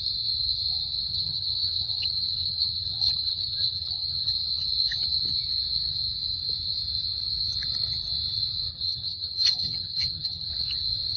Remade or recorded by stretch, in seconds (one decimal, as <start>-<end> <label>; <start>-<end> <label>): 0.0-1.1 recorded; 1.1-4.3 remade; 4.3-8.7 recorded; 8.7-10.5 remade; 10.5-11.2 recorded

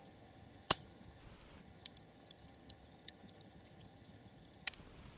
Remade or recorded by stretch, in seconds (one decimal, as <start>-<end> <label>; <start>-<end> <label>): 0.0-1.2 remade; 1.2-1.6 recorded; 1.6-4.7 remade; 4.7-5.2 recorded

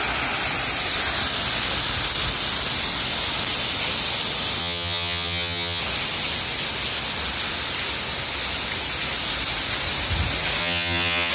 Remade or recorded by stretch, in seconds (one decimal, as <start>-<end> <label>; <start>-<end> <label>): 0.0-4.6 recorded; 4.6-5.8 remade; 5.8-10.6 recorded; 10.6-11.3 remade

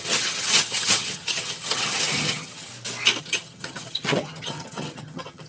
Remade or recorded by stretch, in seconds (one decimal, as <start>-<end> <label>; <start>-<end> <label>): 0.0-2.7 remade; 2.7-3.2 recorded; 3.2-5.5 remade